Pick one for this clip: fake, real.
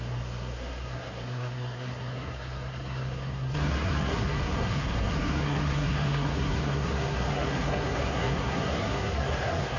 fake